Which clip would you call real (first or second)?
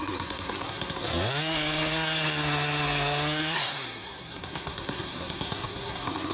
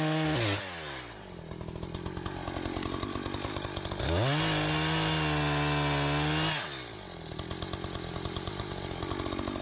second